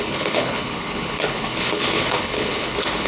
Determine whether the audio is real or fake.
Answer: fake